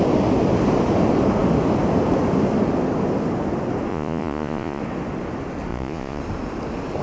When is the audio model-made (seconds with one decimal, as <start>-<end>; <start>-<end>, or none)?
3.9-4.8; 5.7-6.2